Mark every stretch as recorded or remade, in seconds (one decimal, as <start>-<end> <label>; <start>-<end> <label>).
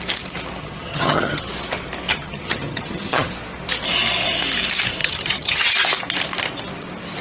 0.0-0.6 recorded; 0.6-1.5 remade; 1.5-2.1 recorded; 2.1-3.3 remade; 3.3-5.0 recorded; 5.0-5.7 remade; 5.7-7.2 recorded